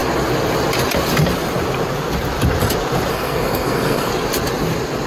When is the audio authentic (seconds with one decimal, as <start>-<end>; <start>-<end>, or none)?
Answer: 0.0-3.1; 4.1-5.1